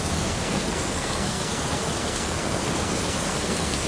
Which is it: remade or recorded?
remade